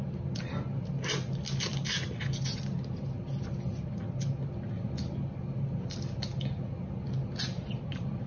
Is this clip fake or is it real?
real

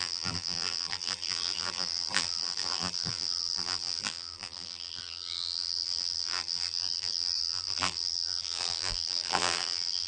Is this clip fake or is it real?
fake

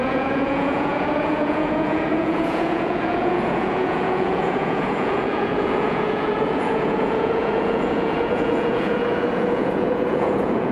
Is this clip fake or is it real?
fake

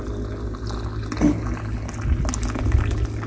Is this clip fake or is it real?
real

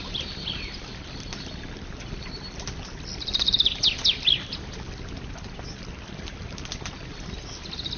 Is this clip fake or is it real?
real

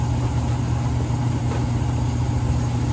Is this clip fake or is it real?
real